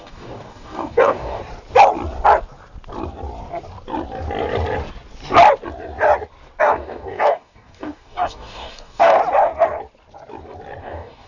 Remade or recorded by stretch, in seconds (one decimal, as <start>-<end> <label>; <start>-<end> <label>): 0.0-1.4 remade; 1.4-6.6 recorded; 6.6-9.2 remade; 9.2-10.8 recorded; 10.8-11.3 remade